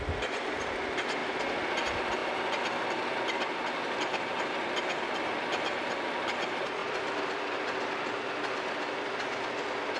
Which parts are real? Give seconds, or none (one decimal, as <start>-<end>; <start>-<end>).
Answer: 0.0-10.0